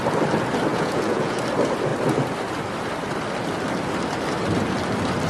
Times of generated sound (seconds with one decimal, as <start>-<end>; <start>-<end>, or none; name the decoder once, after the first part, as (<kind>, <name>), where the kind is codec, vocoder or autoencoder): 0.7-1.4 (vocoder, Vocos)